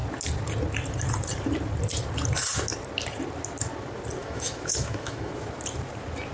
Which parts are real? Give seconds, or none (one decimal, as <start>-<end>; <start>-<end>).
0.0-4.2; 5.3-6.3